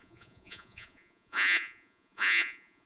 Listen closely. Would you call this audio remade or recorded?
remade